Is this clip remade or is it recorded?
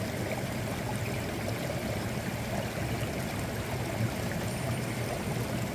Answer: recorded